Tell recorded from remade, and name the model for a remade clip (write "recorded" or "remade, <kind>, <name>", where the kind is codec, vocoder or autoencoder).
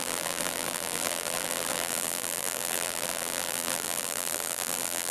remade, vocoder, BigVGAN v2